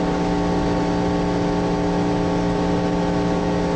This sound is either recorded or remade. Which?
recorded